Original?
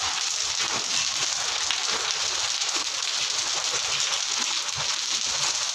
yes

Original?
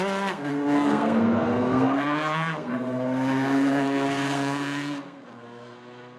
no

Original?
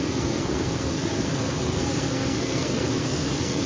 no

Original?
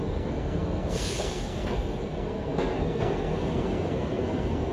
no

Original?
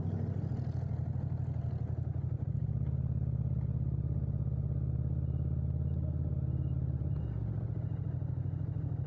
yes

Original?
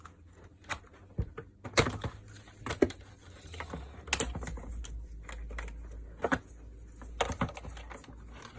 yes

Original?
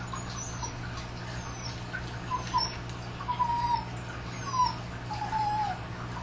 yes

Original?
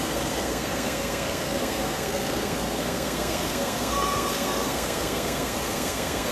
no